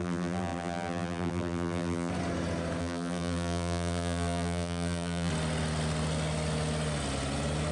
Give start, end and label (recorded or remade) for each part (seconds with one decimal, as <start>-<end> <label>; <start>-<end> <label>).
0.0-2.1 remade; 2.1-2.8 recorded; 2.8-5.3 remade; 5.3-7.7 recorded